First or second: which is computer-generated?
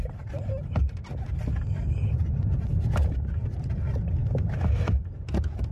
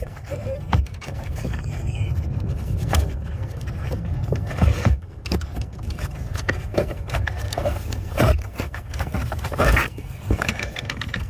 second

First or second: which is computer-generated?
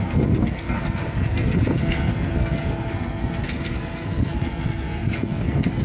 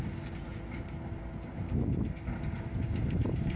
first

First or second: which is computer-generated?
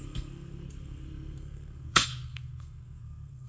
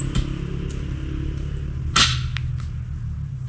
first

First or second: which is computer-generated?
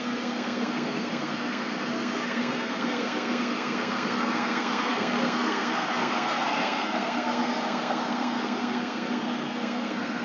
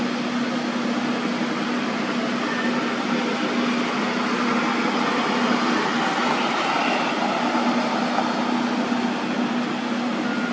first